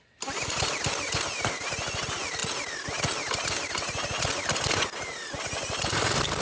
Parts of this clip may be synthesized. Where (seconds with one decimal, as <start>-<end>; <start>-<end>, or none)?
none